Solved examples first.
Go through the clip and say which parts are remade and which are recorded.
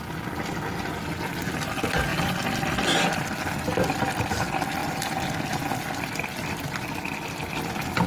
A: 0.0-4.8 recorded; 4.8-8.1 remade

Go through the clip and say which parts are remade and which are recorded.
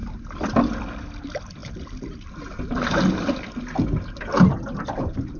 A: 0.0-0.6 recorded; 0.6-1.6 remade; 1.6-4.8 recorded; 4.8-5.4 remade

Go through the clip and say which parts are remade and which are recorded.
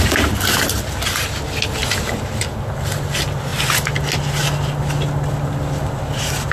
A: 0.0-1.8 recorded; 1.8-2.4 remade; 2.4-6.5 recorded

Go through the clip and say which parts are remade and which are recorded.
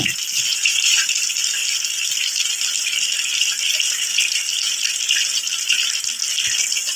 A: 0.0-0.5 recorded; 0.5-1.1 remade; 1.1-7.0 recorded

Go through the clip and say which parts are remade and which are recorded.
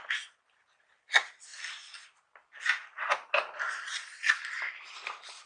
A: 0.0-5.5 recorded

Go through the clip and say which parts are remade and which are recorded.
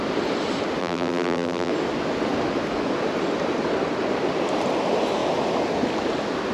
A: 0.0-0.8 recorded; 0.8-1.7 remade; 1.7-6.5 recorded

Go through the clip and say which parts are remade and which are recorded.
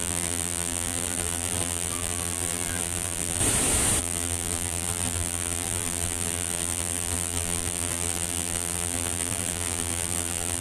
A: 0.0-3.4 remade; 3.4-4.0 recorded; 4.0-10.6 remade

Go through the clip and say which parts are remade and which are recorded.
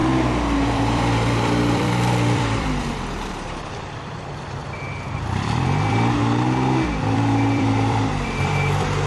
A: 0.0-4.6 remade; 4.6-5.1 recorded; 5.1-6.2 remade; 6.2-6.9 recorded; 6.9-9.1 remade